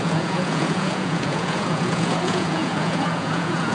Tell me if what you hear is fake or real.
fake